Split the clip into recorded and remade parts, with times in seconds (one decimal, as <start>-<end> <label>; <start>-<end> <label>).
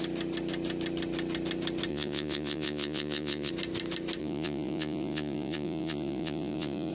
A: 0.0-1.9 recorded; 1.9-3.5 remade; 3.5-4.2 recorded; 4.2-6.9 remade